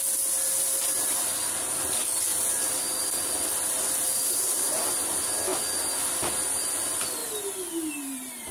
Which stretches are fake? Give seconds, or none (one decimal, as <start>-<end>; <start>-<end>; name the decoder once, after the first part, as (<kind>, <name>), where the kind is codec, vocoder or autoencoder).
0.0-5.5 (vocoder, BigVGAN v2); 6.6-8.5